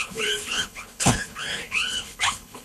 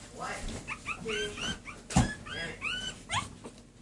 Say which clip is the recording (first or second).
second